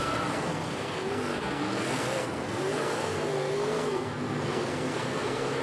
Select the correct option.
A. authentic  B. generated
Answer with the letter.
B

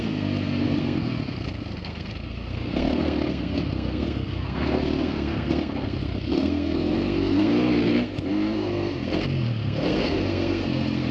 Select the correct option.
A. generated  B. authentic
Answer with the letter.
A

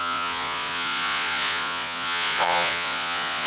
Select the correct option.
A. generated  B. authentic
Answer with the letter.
A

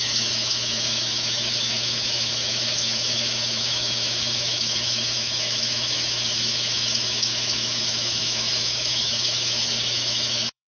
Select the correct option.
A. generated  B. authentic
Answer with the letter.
A